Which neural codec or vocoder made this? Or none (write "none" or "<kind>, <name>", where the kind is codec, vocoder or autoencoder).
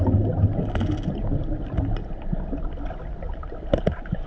none